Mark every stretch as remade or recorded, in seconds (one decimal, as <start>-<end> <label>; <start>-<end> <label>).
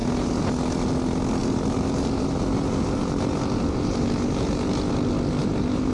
0.0-1.4 recorded; 1.4-4.9 remade; 4.9-5.4 recorded; 5.4-5.9 remade